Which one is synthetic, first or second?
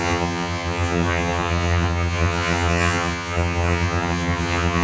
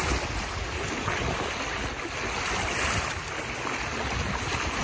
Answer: first